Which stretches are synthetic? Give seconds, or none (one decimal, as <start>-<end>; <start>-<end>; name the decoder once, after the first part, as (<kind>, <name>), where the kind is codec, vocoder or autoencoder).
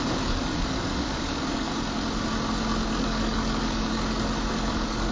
0.0-1.7 (codec, DAC); 2.9-5.1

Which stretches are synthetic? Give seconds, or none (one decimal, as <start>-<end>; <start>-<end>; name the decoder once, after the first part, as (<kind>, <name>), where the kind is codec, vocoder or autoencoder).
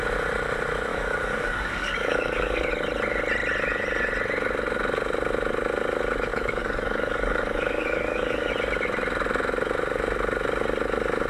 0.9-2.7 (codec, DAC); 6.3-8.5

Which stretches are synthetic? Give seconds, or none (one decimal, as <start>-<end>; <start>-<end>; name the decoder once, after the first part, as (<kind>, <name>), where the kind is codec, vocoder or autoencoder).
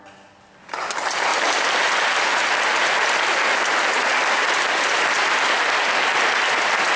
none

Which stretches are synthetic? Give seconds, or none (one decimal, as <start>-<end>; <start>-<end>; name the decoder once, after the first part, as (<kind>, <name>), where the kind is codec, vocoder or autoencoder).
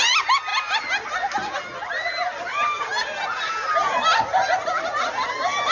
none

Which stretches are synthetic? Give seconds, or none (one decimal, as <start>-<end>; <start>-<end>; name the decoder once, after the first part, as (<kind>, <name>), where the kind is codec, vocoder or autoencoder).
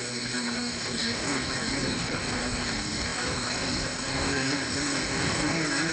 0.0-5.9 (codec, DAC)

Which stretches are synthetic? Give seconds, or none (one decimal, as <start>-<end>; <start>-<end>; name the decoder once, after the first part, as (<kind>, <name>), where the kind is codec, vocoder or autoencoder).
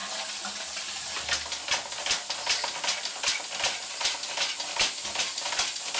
none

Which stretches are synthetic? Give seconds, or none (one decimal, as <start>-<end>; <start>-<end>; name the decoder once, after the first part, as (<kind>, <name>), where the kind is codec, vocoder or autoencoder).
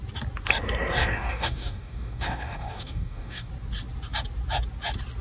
1.0-3.5 (codec, DAC)